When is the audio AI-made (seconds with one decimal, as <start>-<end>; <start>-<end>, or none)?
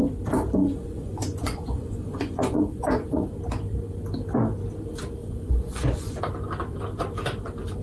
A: 0.6-3.3; 5.2-6.2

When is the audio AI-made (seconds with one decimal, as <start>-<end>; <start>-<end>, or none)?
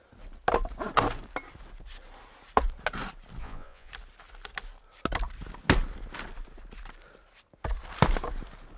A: 3.4-3.9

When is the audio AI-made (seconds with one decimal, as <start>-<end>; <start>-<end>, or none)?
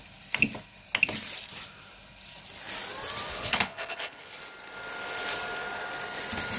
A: 3.3-4.4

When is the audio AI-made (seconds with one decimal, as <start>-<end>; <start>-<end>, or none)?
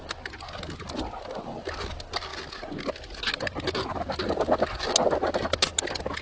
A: none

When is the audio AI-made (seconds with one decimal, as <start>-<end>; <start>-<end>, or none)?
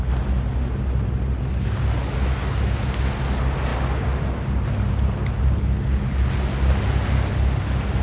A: none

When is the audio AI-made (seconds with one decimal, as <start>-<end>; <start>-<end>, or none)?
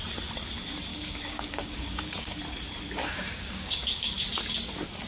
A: 0.9-2.4; 3.0-4.2